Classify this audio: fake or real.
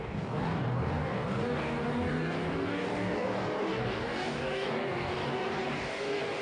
fake